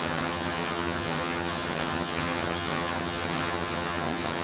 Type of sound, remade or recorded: remade